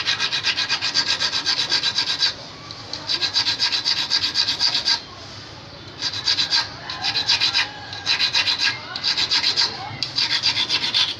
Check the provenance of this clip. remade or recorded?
recorded